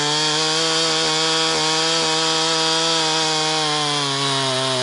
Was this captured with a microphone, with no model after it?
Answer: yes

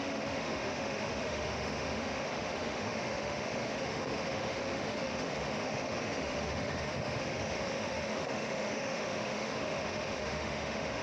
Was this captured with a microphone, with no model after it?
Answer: no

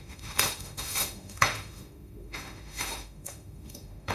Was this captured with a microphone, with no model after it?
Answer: no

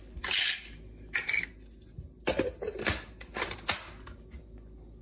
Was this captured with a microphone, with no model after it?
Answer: yes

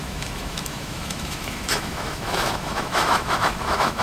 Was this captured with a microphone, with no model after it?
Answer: no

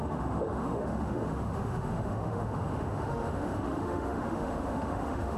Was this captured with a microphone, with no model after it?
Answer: no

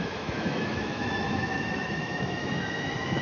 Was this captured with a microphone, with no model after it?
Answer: no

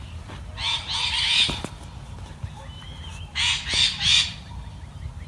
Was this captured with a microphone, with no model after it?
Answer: yes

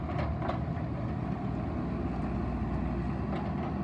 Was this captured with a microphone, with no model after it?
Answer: yes